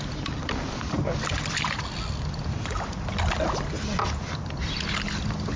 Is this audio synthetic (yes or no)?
no